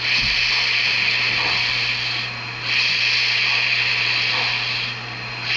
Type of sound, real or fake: real